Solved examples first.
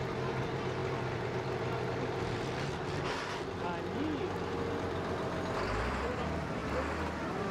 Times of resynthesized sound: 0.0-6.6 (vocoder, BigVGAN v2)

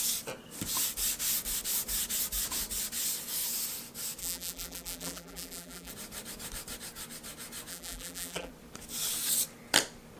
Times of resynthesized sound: 4.2-5.9 (vocoder, BigVGAN v2); 7.7-8.5

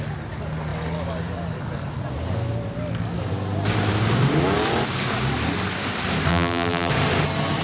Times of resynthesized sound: 6.3-6.9 (vocoder, BigVGAN v2)

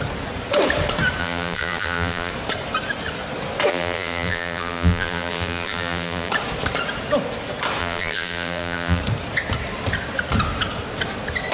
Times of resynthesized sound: 1.2-2.3 (vocoder, BigVGAN v2); 3.7-6.3; 7.8-9.0